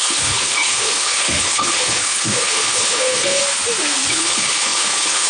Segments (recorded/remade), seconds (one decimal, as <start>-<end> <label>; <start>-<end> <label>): 0.0-3.4 remade; 3.4-4.1 recorded; 4.1-5.3 remade